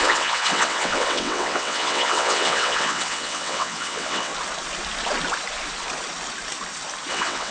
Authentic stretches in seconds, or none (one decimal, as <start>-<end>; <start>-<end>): 4.3-7.1